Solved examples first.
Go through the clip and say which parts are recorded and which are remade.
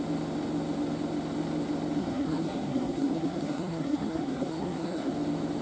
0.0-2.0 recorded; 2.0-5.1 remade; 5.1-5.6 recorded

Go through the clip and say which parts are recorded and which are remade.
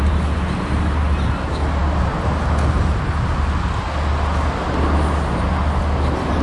0.0-6.4 recorded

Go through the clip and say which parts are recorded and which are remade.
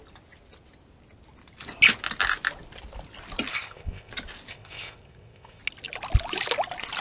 0.0-3.5 recorded; 3.5-4.1 remade; 4.1-4.5 recorded; 4.5-5.6 remade; 5.6-7.0 recorded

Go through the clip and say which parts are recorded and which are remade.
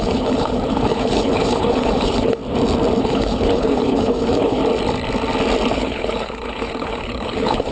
0.0-2.4 remade; 2.4-3.0 recorded; 3.0-4.6 remade; 4.6-5.7 recorded; 5.7-7.7 remade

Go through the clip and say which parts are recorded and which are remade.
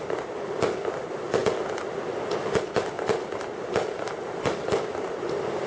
0.0-5.7 recorded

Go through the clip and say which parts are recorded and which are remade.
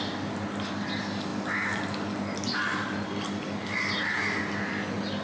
0.0-5.2 recorded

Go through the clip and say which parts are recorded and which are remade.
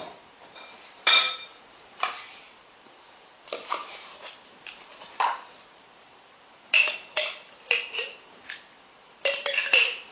0.0-10.1 remade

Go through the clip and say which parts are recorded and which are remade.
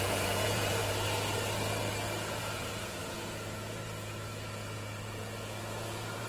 0.0-0.8 remade; 0.8-2.4 recorded; 2.4-6.3 remade